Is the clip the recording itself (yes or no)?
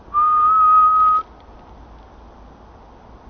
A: yes